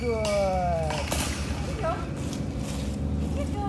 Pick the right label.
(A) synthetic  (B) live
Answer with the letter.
B